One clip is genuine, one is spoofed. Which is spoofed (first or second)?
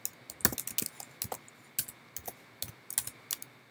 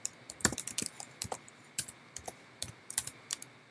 second